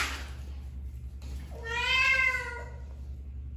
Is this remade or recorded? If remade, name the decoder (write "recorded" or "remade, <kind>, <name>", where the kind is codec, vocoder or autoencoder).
recorded